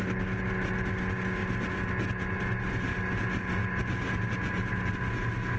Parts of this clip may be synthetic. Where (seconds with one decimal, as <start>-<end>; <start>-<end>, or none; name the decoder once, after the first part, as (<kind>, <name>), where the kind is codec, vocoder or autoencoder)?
none